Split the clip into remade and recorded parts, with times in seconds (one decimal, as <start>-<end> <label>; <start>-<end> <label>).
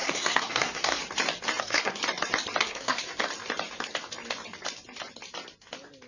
0.0-1.0 remade; 1.0-1.6 recorded; 1.6-2.0 remade; 2.0-2.6 recorded; 2.6-3.0 remade; 3.0-6.1 recorded